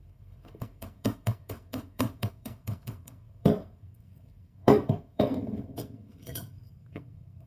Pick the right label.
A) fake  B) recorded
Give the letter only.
A